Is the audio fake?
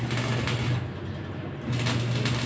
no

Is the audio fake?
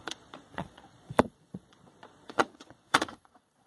yes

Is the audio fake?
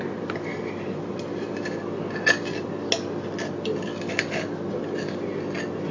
no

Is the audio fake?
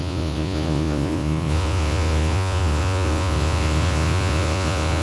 yes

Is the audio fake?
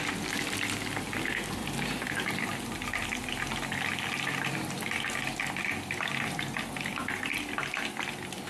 no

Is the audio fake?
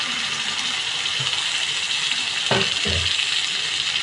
no